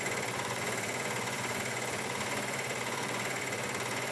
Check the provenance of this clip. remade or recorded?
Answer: remade